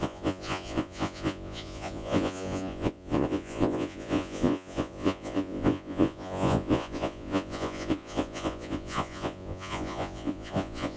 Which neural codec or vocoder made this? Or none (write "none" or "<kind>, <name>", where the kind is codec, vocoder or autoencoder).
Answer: vocoder, Vocos